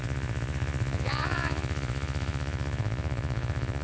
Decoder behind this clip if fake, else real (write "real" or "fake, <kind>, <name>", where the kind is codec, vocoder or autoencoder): fake, vocoder, Vocos